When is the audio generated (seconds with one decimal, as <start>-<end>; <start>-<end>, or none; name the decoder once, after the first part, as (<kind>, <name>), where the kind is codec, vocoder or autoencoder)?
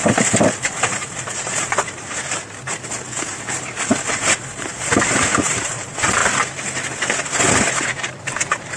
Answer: 0.6-2.2 (vocoder, BigVGAN v2); 4.1-6.2; 7.7-8.8